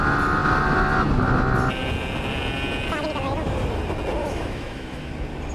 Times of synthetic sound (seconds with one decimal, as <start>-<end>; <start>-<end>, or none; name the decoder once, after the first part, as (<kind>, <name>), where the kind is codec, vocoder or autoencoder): 4.2-5.1 (autoencoder, DAC-VAE)